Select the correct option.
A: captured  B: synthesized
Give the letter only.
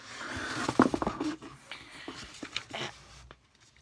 A